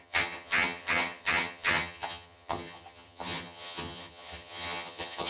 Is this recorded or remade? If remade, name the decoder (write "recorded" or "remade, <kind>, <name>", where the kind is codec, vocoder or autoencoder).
remade, vocoder, HiFi-GAN